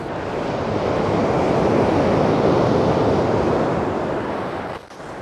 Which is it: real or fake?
real